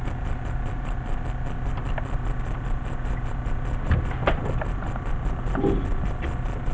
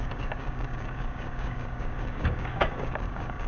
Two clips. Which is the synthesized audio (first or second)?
second